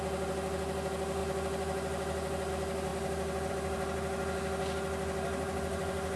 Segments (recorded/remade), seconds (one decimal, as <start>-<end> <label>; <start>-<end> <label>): 0.0-6.2 recorded